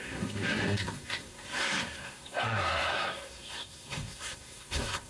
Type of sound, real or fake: fake